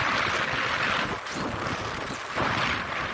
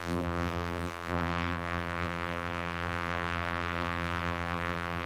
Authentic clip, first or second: first